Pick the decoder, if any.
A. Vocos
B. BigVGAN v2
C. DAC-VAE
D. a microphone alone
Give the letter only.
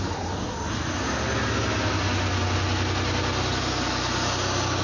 D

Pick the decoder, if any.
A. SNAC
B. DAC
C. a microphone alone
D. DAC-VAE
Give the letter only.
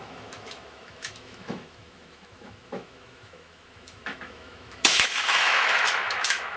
D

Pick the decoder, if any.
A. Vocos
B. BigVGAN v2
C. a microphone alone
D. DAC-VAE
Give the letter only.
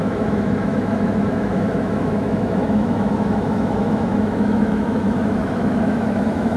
D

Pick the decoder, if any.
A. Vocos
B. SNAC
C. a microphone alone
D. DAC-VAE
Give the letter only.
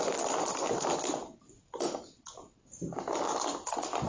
C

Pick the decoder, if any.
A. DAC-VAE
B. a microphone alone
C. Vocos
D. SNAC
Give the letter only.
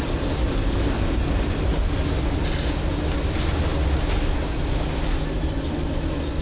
B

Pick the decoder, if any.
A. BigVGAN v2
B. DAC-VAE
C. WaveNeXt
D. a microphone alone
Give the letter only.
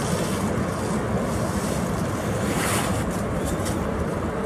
D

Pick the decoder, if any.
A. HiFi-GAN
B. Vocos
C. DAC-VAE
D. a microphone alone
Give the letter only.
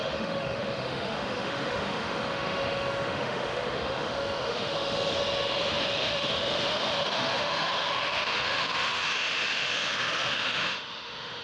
C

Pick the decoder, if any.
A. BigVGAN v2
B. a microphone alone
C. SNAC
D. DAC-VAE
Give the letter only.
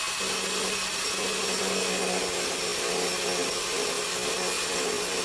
B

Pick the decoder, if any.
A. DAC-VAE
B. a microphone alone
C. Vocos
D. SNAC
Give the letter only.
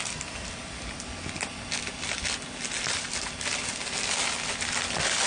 B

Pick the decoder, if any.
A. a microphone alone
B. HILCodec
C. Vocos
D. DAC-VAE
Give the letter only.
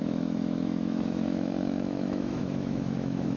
D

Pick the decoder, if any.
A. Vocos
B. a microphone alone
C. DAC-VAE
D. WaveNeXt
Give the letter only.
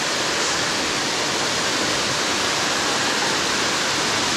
B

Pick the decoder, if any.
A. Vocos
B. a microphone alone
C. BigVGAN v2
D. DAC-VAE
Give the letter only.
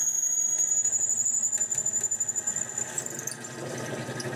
B